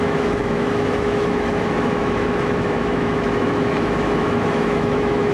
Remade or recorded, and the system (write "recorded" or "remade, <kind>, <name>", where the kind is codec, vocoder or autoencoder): remade, autoencoder, DAC-VAE